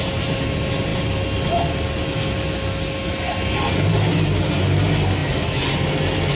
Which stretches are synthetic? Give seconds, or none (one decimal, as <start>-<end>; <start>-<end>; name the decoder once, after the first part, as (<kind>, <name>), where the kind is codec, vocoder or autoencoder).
none